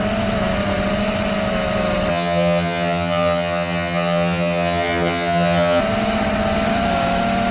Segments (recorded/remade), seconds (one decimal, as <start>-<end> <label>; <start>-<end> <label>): 0.0-2.1 recorded; 2.1-5.8 remade; 5.8-7.5 recorded